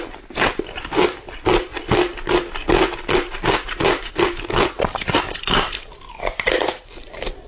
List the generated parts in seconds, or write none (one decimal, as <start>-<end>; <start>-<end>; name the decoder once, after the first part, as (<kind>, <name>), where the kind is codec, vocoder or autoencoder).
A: none